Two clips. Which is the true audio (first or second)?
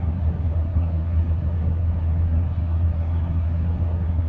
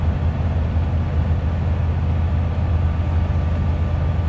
second